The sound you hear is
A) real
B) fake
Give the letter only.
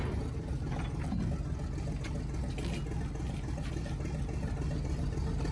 A